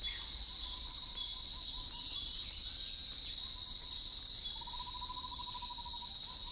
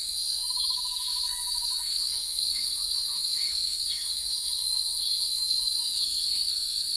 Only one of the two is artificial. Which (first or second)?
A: second